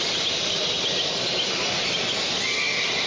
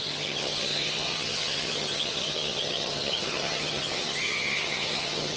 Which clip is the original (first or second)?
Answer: first